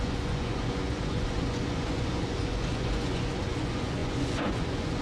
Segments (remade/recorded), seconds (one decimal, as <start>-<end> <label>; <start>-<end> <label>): 0.0-5.0 remade